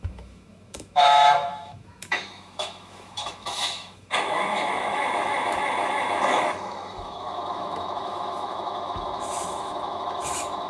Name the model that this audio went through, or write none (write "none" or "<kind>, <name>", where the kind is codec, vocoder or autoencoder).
autoencoder, DAC-VAE